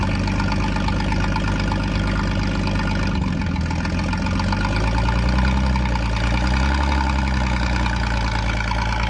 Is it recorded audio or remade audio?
recorded